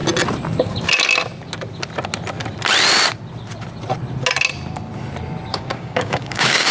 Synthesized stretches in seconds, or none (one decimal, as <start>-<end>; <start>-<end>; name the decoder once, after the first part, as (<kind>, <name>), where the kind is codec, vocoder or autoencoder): 5.5-6.7 (codec, DAC)